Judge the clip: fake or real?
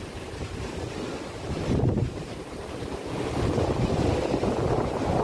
real